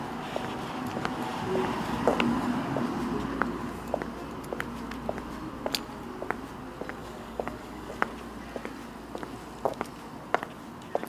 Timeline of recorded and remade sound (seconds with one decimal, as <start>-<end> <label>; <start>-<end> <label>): 0.0-7.0 recorded; 7.0-7.9 remade; 7.9-11.1 recorded